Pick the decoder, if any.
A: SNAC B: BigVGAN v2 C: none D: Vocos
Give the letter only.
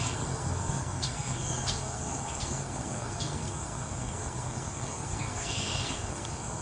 A